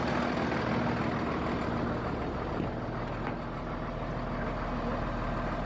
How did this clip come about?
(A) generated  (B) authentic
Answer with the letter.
B